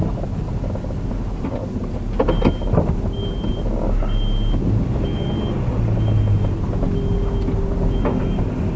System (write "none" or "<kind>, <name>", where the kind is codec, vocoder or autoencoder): none